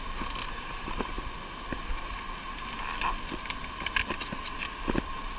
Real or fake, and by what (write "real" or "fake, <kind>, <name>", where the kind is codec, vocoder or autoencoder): real